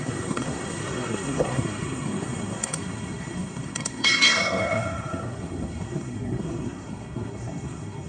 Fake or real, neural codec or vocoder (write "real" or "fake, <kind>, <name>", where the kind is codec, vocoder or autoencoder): fake, codec, SNAC